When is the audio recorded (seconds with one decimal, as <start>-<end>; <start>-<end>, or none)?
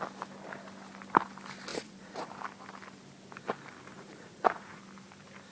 0.0-1.7; 2.3-3.9; 4.8-5.5